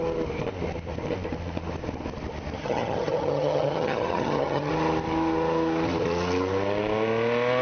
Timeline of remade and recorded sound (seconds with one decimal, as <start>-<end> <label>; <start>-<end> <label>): 0.0-2.6 recorded; 2.6-4.7 remade; 4.7-7.6 recorded